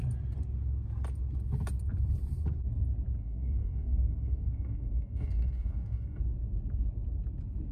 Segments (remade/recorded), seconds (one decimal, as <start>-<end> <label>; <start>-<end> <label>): 0.0-3.2 recorded; 3.2-6.2 remade; 6.2-7.7 recorded